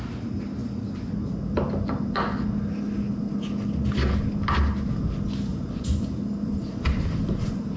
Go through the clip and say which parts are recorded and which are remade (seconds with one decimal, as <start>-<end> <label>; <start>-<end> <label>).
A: 0.0-5.5 recorded; 5.5-7.8 remade